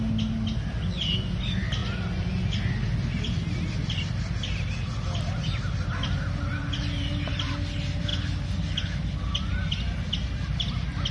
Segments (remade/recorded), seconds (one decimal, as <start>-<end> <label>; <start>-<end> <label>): 0.0-11.1 recorded